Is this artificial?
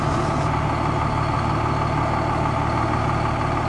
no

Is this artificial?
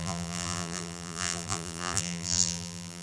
yes